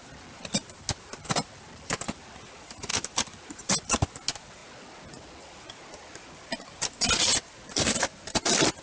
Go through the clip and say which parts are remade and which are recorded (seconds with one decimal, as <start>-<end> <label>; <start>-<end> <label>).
0.0-8.8 recorded